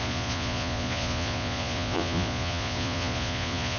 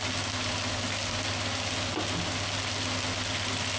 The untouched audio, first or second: second